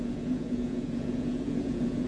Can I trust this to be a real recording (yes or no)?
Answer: no